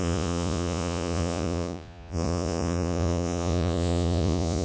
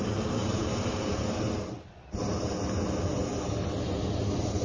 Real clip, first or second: second